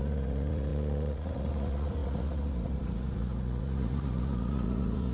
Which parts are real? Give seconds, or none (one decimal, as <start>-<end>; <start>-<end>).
none